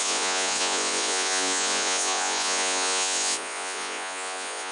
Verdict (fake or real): fake